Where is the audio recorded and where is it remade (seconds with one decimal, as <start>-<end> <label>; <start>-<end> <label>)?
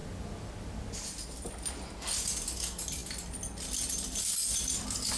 0.0-5.2 recorded